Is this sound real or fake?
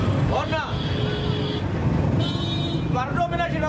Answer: real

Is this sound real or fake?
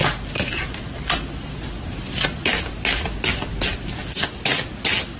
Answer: real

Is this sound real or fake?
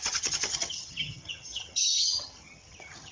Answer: fake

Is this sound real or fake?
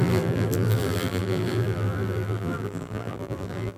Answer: fake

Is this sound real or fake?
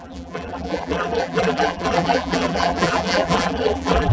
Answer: fake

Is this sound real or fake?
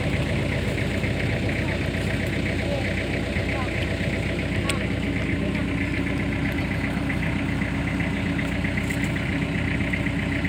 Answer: real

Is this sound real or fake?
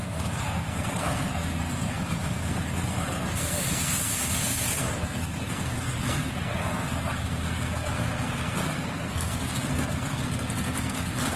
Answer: fake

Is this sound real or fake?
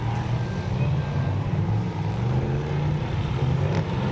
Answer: real